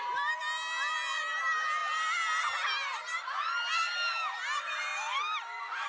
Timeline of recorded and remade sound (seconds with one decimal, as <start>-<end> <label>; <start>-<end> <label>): 0.0-5.9 recorded